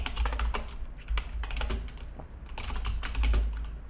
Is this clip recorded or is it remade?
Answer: recorded